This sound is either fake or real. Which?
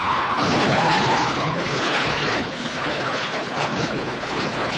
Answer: fake